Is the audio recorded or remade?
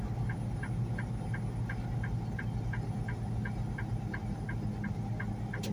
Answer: recorded